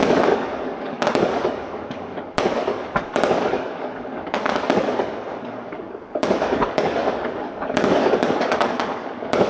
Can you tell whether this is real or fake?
fake